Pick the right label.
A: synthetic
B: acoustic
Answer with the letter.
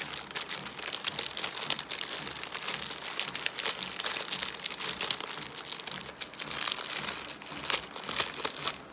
B